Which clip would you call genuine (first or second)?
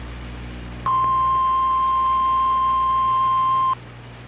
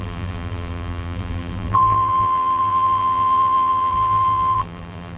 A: first